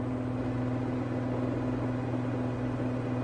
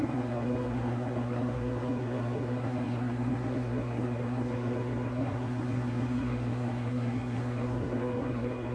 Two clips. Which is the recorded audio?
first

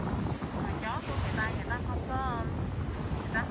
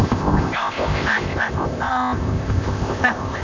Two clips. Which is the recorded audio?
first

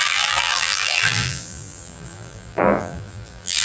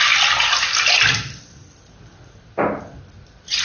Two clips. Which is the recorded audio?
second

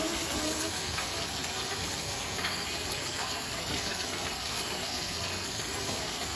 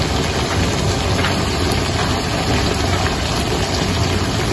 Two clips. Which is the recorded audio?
second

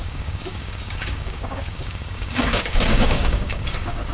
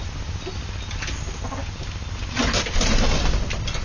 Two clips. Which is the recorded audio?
second